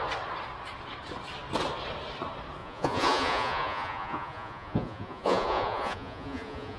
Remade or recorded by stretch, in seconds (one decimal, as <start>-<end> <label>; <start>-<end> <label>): 0.0-2.6 recorded; 2.6-6.8 remade